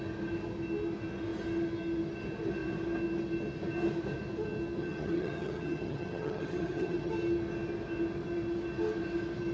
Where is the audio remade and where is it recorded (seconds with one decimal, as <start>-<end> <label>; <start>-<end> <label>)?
0.0-4.8 recorded; 4.8-7.1 remade; 7.1-9.5 recorded